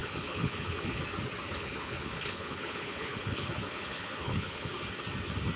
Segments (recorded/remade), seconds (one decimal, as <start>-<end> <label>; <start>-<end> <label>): 0.0-1.0 remade; 1.0-1.5 recorded; 1.5-4.7 remade; 4.7-5.6 recorded